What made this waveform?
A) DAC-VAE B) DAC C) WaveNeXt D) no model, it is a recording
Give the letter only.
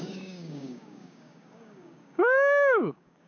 B